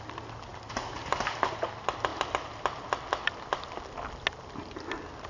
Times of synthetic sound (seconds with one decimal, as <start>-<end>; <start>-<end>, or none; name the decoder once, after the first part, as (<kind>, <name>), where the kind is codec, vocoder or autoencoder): none

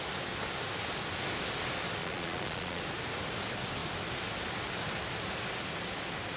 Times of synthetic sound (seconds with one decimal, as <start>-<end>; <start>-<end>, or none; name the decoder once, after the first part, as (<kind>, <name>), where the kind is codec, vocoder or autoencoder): 2.0-2.8 (vocoder, Vocos)

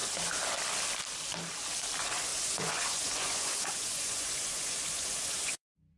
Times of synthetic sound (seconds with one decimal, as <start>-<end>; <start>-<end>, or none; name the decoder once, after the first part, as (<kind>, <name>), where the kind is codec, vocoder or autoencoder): 2.3-6.0 (vocoder, Vocos)